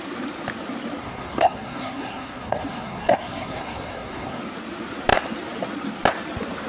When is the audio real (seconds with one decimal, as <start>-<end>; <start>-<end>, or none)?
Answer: 0.0-1.0; 4.4-6.7